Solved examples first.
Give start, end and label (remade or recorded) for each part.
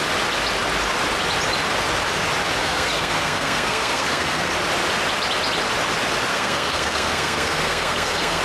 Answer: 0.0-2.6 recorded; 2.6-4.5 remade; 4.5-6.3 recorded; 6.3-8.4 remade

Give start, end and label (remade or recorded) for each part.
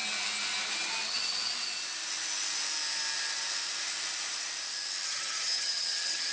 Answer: 0.0-5.1 recorded; 5.1-6.3 remade